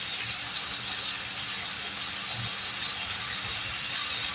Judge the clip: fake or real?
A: real